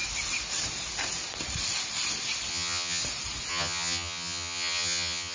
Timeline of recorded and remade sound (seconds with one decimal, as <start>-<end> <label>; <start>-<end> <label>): 0.0-2.5 recorded; 2.5-3.0 remade; 3.0-3.5 recorded; 3.5-5.3 remade